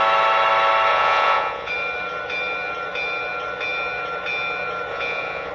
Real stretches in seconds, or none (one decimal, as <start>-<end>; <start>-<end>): 0.0-0.9; 1.7-4.9